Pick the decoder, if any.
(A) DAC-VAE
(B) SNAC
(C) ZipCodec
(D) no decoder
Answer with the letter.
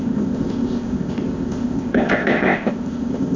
C